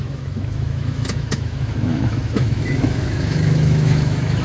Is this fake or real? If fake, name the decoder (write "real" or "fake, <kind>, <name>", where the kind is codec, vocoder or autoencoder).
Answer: fake, autoencoder, DAC-VAE